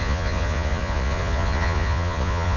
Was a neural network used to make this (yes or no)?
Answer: yes